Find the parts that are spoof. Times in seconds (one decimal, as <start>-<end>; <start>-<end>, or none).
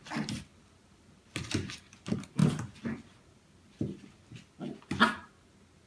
none